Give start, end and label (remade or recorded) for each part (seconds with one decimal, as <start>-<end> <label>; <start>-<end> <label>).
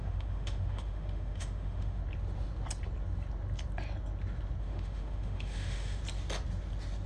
0.0-2.0 remade; 2.0-4.6 recorded; 4.6-6.0 remade; 6.0-7.1 recorded